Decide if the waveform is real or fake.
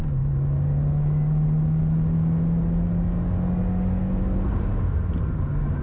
real